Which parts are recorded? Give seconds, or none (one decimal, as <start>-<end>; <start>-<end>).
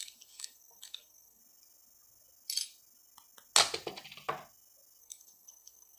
1.4-5.0